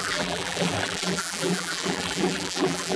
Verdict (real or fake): fake